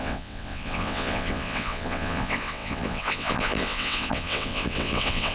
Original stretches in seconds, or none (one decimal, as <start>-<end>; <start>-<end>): none

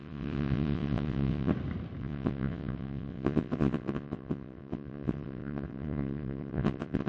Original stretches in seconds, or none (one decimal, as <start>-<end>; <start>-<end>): 1.5-2.0

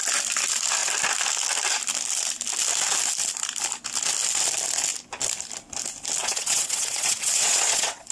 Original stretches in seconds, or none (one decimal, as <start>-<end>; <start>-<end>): 0.0-6.2

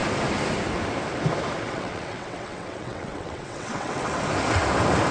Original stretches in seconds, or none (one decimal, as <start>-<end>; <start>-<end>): 0.0-1.7; 4.1-5.1

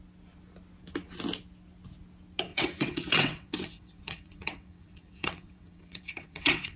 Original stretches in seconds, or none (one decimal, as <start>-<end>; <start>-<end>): 0.0-2.5